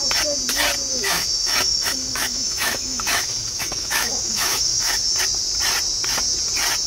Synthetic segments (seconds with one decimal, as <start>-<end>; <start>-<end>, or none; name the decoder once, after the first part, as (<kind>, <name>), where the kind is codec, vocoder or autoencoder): 0.9-5.0 (autoencoder, DAC-VAE)